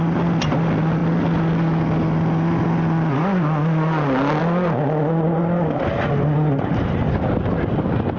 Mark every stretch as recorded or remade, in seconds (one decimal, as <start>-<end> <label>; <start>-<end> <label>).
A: 0.0-8.2 recorded